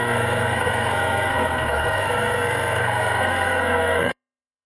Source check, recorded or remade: remade